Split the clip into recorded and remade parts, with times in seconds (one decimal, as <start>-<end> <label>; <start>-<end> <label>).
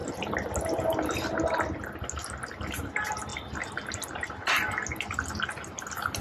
0.0-6.2 recorded